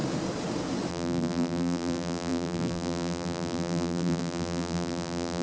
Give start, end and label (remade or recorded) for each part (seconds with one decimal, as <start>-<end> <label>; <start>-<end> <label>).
0.0-0.9 recorded; 0.9-5.4 remade